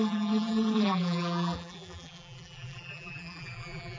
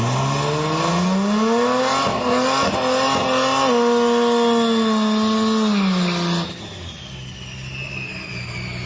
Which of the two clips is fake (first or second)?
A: first